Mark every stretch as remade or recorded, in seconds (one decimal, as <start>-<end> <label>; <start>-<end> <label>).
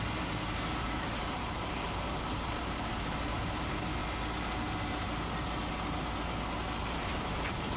0.0-4.0 remade; 4.0-6.9 recorded; 6.9-7.8 remade